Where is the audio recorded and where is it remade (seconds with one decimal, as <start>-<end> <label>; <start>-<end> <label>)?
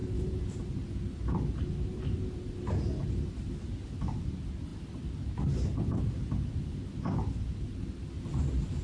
0.0-8.8 recorded